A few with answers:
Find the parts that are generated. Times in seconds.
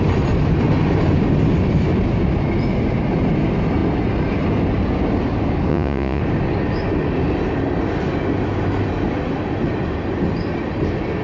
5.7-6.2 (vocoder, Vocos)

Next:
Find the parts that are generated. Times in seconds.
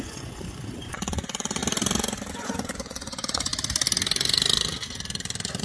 0.0-1.6 (vocoder, Vocos); 2.3-3.5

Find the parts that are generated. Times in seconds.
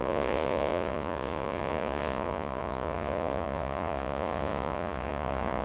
0.0-5.6 (vocoder, Vocos)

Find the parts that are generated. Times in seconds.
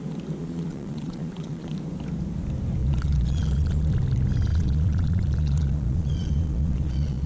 0.4-1.7 (vocoder, Vocos); 2.8-3.9; 4.5-7.3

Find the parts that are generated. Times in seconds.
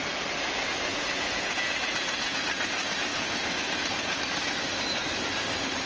0.9-2.4 (vocoder, Vocos); 3.1-4.2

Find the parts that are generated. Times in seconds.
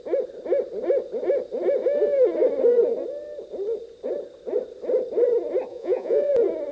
5.7-6.3 (vocoder, Vocos)